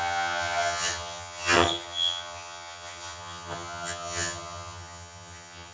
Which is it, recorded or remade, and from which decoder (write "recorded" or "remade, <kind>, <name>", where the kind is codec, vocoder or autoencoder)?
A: remade, vocoder, HiFi-GAN